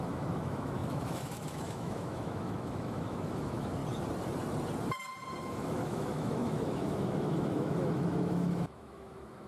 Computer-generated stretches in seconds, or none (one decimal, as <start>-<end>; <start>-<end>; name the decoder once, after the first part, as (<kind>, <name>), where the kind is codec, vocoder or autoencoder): 0.0-3.8 (autoencoder, DAC-VAE); 5.4-9.5